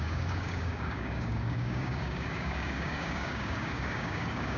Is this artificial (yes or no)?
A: yes